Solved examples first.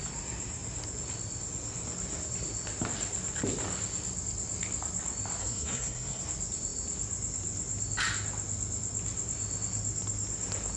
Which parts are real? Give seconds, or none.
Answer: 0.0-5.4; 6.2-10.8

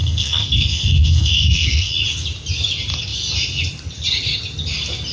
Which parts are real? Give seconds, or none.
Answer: 1.9-5.1

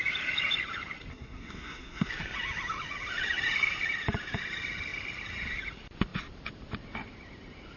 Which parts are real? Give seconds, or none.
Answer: 0.0-1.1; 2.1-7.8

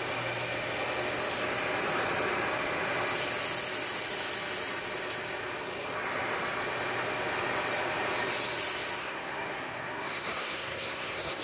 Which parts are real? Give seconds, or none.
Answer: 0.0-9.0

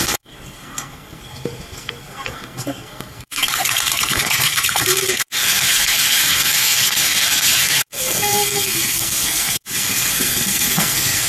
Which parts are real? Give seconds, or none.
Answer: none

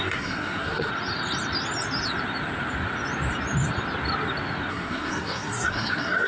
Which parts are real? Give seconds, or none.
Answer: 0.9-4.7

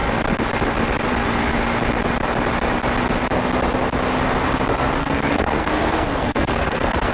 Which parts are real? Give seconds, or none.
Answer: 0.0-5.0

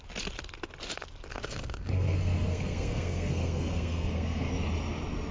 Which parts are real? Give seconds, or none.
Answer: 0.0-1.3; 4.5-5.3